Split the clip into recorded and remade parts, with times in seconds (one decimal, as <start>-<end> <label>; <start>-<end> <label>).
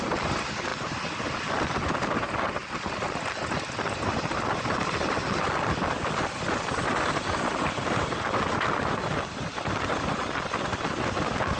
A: 0.0-11.6 recorded